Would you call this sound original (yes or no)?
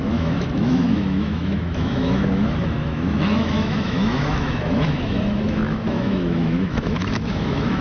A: no